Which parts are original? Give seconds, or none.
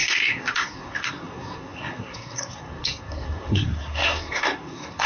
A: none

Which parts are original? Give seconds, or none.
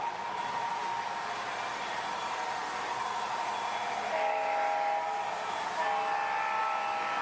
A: 0.0-7.2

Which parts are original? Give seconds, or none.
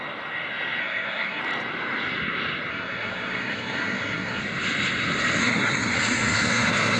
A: 0.0-0.8; 1.4-2.7; 4.4-5.4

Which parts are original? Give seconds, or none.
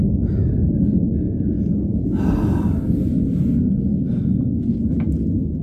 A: 0.0-5.6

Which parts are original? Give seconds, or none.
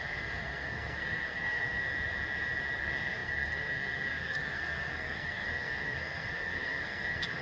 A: 1.8-2.8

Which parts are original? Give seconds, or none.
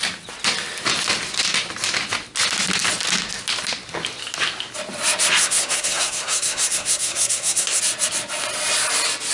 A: 0.0-5.4; 7.8-9.3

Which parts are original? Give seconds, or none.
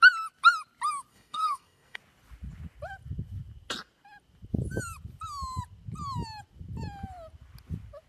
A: 0.0-1.1; 2.0-8.1